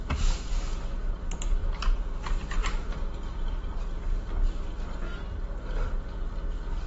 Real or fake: real